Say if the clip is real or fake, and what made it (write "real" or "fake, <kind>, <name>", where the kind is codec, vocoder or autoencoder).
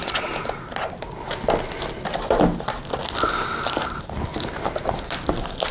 real